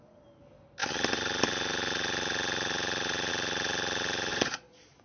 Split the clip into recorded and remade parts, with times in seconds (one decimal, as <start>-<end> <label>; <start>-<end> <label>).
0.0-4.3 recorded; 4.3-5.0 remade